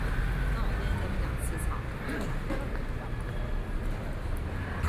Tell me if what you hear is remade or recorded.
recorded